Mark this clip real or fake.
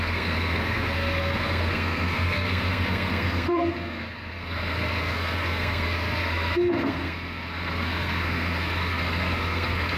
fake